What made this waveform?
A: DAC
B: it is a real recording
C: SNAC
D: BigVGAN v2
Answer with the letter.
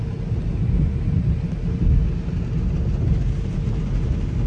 B